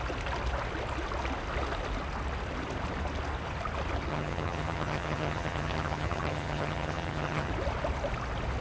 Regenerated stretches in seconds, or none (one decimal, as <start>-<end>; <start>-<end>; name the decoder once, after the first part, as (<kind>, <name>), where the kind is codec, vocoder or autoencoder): 4.1-7.5 (vocoder, HiFi-GAN)